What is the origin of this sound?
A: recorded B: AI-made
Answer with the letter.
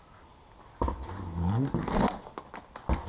A